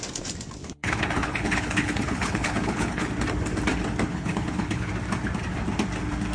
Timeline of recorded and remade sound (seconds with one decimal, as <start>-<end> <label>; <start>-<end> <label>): 0.0-0.6 recorded; 0.6-3.1 remade; 3.1-4.1 recorded; 4.1-4.9 remade; 4.9-6.3 recorded